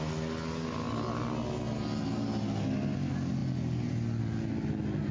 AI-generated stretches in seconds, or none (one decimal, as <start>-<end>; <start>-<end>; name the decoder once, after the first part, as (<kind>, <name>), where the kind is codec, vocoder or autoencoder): none